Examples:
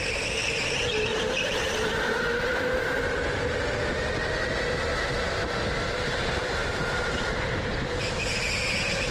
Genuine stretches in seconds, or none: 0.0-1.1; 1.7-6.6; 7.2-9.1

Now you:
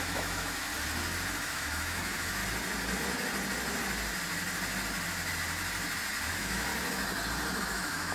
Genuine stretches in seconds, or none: 0.7-1.4; 2.4-6.3; 6.7-7.6

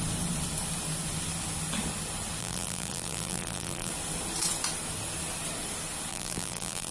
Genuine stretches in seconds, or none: 0.0-2.4; 3.9-6.1

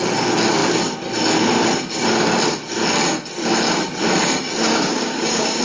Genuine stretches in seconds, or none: 0.0-4.7

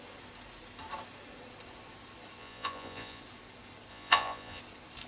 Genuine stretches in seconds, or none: 0.0-2.4; 3.2-3.9; 4.6-5.1

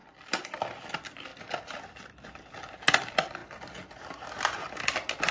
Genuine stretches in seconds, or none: 0.6-1.3; 2.4-5.3

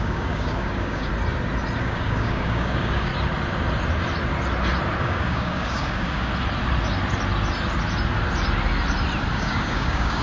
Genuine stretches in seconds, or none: 1.1-1.8; 3.1-5.0; 6.3-9.3

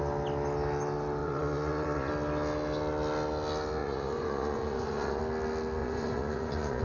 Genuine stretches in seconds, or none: 0.0-1.2; 2.1-3.8; 5.2-5.8